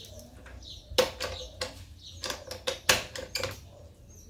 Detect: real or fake real